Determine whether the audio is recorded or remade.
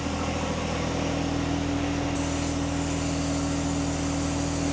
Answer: recorded